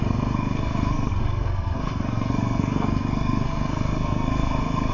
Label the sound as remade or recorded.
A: remade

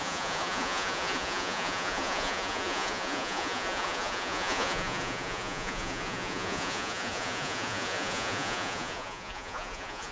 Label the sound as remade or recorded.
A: remade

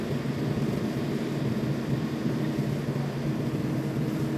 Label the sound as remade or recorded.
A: recorded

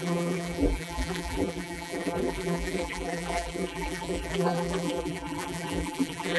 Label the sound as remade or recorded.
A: remade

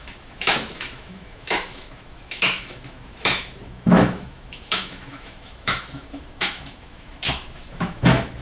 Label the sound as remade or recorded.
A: remade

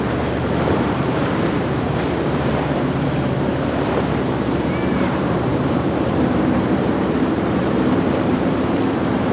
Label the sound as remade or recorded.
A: remade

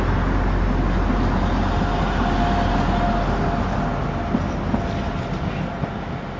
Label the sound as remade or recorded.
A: recorded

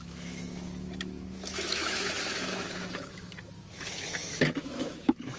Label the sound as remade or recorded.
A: remade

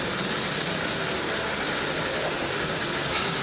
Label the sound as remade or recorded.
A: recorded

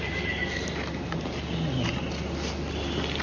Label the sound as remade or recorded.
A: recorded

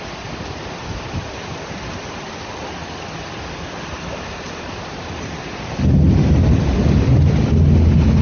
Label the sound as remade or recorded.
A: recorded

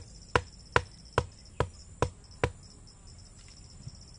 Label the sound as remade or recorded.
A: recorded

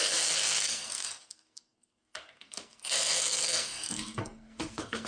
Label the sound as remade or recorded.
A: remade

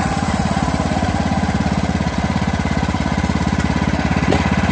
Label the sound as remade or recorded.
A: remade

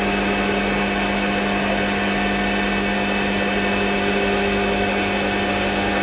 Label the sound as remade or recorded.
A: recorded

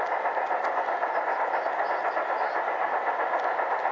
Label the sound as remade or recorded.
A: recorded